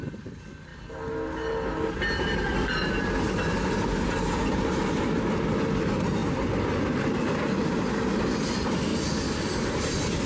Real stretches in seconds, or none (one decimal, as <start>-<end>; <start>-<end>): 0.0-10.3